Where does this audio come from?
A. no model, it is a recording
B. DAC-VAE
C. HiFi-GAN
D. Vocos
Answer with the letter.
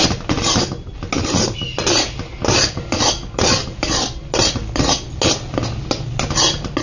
A